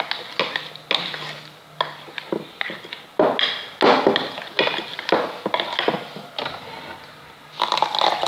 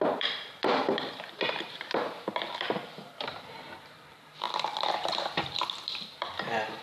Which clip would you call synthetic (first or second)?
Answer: second